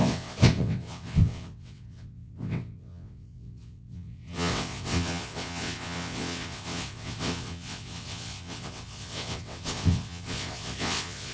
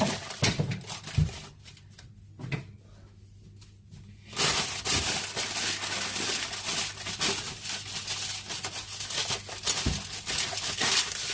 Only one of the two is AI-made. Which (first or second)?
first